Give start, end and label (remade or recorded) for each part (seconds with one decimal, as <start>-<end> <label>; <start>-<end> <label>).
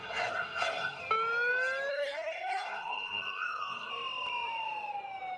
0.0-1.0 remade; 1.0-1.9 recorded; 1.9-3.9 remade; 3.9-5.4 recorded